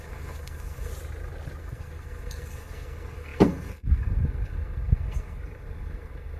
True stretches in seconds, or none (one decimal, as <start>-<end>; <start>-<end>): 0.9-1.6